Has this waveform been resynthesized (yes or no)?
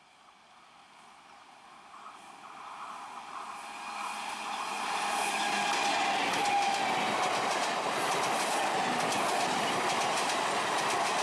no